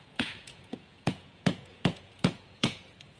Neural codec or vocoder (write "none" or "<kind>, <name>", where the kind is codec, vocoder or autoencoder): vocoder, Vocos